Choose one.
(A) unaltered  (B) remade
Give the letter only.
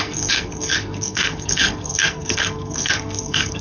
B